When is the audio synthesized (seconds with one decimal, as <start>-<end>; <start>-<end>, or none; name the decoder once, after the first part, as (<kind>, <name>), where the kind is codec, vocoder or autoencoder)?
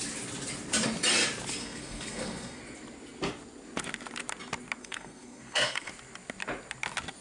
1.6-2.6 (codec, SNAC); 4.8-5.9